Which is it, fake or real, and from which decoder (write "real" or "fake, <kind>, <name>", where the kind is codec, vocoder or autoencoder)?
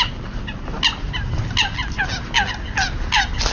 real